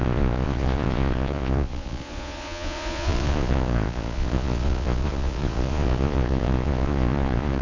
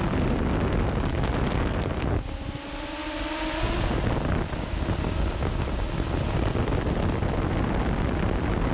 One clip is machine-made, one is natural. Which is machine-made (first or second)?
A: first